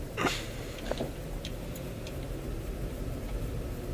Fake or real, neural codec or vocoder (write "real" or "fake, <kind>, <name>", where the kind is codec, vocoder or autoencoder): real